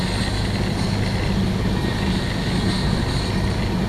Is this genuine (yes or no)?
yes